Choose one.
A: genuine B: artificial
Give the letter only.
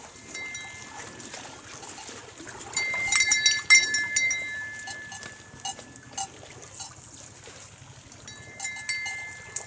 A